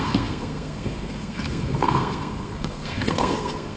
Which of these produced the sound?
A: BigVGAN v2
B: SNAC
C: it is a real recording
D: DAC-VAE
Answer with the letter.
B